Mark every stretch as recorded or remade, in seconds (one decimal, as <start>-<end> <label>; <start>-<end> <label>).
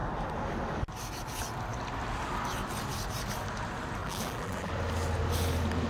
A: 0.0-4.0 recorded; 4.0-4.7 remade; 4.7-5.9 recorded